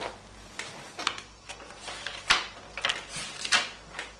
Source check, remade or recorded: recorded